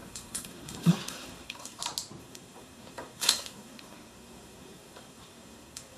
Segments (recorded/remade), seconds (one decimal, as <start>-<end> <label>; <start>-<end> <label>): 0.0-1.8 remade; 1.8-2.2 recorded; 2.2-6.0 remade